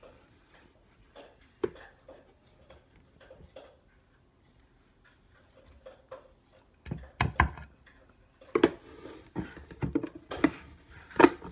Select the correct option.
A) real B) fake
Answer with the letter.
A